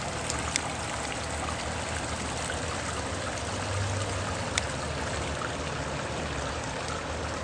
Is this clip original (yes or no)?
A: yes